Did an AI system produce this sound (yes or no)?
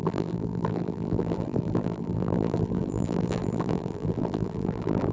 yes